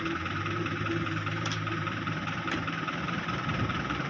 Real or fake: fake